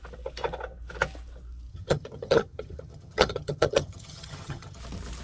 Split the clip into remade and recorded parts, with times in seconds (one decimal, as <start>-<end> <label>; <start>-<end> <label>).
0.0-1.7 recorded; 1.7-4.8 remade; 4.8-5.2 recorded